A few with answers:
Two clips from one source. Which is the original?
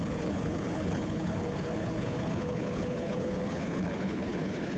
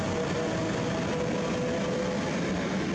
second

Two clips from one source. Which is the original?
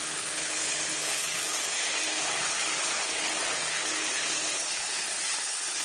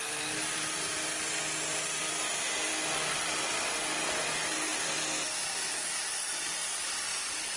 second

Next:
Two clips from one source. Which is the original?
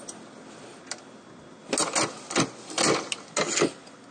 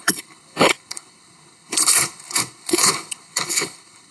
first